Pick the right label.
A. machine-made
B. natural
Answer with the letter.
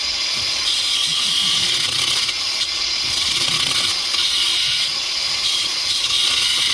A